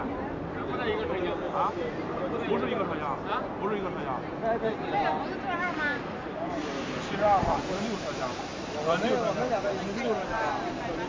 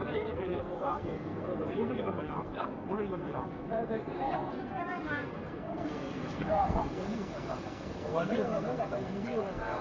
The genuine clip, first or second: first